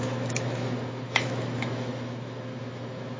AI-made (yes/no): yes